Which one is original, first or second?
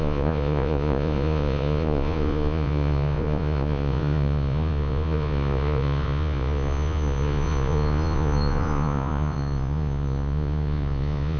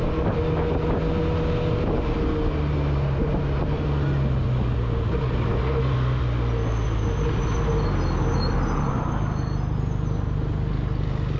second